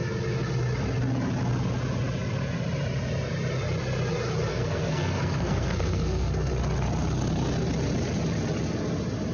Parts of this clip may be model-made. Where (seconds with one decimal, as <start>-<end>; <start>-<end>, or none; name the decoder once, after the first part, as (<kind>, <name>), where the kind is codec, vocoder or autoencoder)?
4.5-6.5 (codec, SNAC)

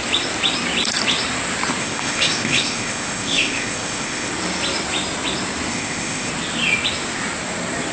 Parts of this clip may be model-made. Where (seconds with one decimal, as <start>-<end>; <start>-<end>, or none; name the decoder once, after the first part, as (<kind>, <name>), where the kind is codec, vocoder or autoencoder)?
1.8-4.3 (codec, ZipCodec); 5.7-6.3

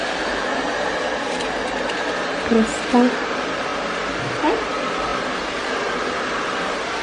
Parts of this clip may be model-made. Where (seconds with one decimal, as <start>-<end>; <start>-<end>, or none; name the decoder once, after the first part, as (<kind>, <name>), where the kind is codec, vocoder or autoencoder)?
0.0-3.7 (vocoder, BigVGAN v2); 4.2-7.0

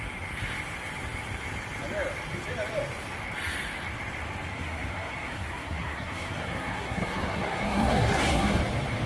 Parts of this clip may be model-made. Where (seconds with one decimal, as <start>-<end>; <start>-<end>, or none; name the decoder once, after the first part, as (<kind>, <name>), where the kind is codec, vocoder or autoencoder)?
4.5-8.6 (codec, SNAC)

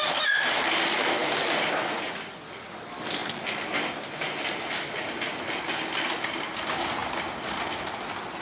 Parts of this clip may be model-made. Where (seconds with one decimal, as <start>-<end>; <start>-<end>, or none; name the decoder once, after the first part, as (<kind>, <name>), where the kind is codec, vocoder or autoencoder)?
none

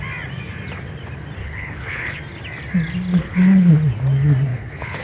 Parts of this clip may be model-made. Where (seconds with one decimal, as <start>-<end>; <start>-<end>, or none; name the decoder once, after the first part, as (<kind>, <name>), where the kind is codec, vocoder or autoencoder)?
1.4-2.2 (codec, HILCodec); 3.1-3.7; 4.5-5.0

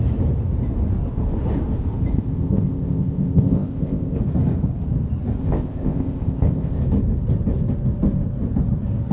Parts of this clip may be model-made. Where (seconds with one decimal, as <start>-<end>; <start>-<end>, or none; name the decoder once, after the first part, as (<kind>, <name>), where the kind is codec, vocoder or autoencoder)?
2.1-4.2 (codec, ZipCodec); 5.4-6.8

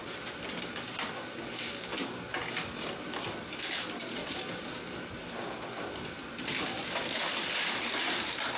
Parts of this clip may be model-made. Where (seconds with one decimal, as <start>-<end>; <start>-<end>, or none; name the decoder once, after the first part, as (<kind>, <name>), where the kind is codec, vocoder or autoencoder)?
none